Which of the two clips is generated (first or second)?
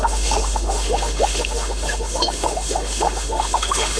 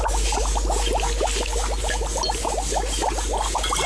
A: first